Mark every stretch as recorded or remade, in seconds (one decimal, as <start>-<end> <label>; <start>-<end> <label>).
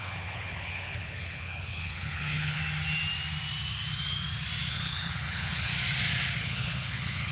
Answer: 0.0-2.6 remade; 2.6-4.7 recorded; 4.7-5.7 remade; 5.7-6.4 recorded; 6.4-7.3 remade